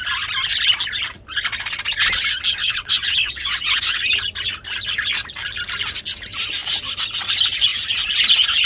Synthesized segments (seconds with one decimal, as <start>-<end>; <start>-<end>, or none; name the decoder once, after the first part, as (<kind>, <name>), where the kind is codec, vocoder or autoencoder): 2.6-4.0 (vocoder, WaveNeXt)